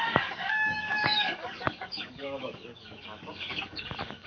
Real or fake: fake